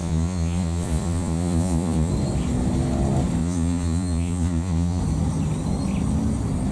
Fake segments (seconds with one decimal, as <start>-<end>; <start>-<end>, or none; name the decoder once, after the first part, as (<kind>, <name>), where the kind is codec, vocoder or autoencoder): 0.0-2.1 (vocoder, Vocos); 3.4-5.0